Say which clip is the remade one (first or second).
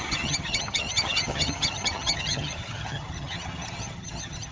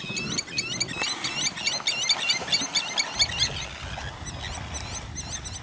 first